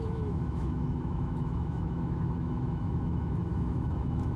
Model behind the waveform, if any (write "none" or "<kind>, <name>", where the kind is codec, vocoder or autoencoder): autoencoder, DAC-VAE